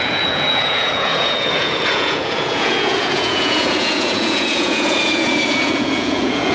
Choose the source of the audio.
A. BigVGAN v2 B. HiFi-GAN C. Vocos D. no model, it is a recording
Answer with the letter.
C